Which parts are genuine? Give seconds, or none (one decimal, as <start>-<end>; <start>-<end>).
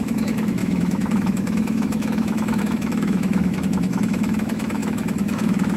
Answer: none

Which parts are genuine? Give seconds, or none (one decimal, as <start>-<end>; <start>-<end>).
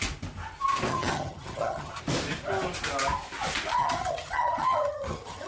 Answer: 0.0-0.9; 2.0-3.7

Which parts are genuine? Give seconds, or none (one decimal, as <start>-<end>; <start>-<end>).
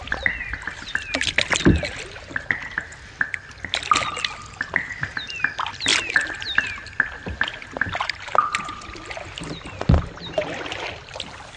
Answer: 0.0-11.6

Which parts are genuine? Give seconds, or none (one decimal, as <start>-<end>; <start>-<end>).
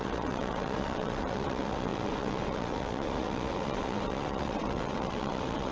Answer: none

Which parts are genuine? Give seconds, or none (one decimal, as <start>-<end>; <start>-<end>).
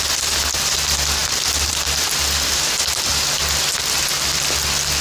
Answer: 1.2-1.7; 3.1-5.0